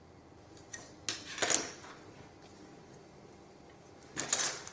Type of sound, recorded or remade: recorded